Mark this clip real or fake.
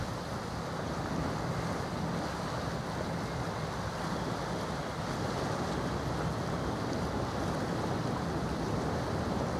real